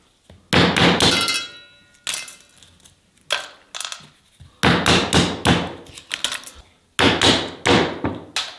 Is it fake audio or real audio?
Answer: real